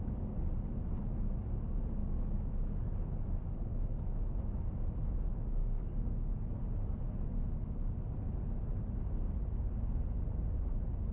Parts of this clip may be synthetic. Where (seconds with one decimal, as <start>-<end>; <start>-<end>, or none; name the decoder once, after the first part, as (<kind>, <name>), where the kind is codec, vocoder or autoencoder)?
5.6-6.3 (codec, DAC); 7.3-8.3